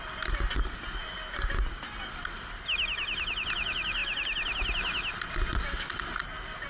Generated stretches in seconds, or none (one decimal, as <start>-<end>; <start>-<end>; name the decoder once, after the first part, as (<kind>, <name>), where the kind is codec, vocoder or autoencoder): none

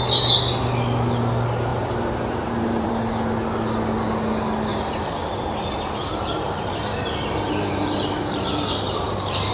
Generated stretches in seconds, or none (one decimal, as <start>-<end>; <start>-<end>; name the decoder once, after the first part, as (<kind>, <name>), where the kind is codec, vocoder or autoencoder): 1.7-2.9 (vocoder, BigVGAN v2); 4.7-9.5

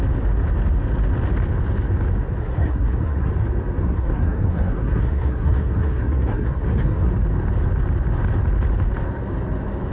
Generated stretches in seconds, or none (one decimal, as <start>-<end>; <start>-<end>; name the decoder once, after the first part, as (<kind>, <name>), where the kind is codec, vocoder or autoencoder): 2.4-3.3 (codec, SNAC); 3.8-7.1

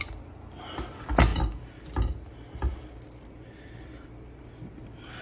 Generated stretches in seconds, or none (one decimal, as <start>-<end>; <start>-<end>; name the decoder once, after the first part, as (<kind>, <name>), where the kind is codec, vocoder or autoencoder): none

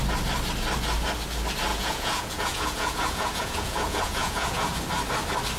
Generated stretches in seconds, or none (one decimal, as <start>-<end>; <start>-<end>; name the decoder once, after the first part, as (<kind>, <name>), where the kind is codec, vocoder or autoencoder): 1.7-4.8 (vocoder, Vocos)